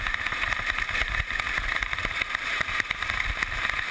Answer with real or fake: real